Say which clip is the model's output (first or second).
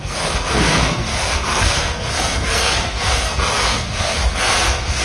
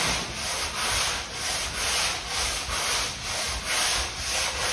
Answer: first